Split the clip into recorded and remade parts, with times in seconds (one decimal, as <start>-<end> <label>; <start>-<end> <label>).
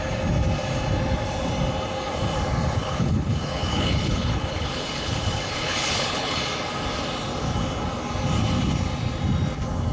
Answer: 0.0-2.8 recorded; 2.8-6.4 remade; 6.4-9.9 recorded